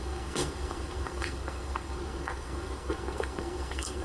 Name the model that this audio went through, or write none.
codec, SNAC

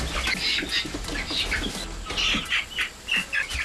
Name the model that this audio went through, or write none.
none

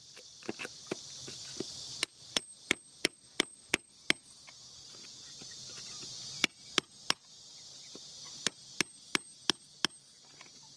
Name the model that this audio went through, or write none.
none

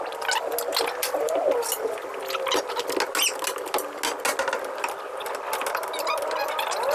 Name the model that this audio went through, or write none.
none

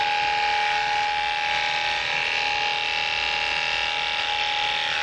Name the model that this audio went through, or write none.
none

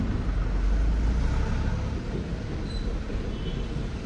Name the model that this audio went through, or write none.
none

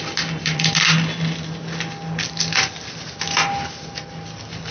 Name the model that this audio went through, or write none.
none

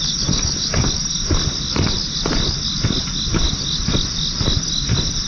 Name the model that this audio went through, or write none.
none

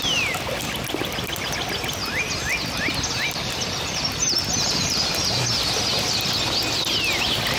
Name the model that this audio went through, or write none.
none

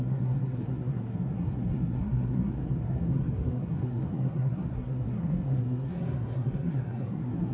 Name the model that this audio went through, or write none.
codec, SNAC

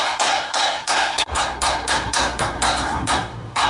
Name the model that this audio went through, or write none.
codec, SNAC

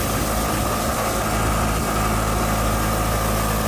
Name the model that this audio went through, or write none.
none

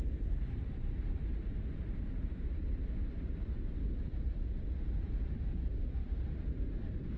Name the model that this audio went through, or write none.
none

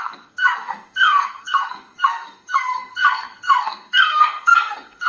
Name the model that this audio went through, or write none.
codec, SNAC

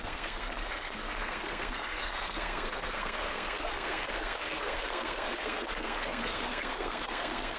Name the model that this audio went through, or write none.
codec, SNAC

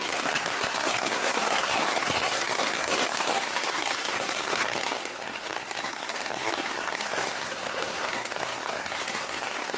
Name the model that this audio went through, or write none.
codec, SNAC